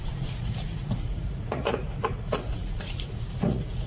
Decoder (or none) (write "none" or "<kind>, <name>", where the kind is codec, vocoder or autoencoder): vocoder, Vocos